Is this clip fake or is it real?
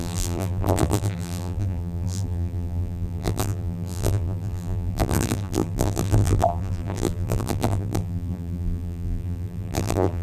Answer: fake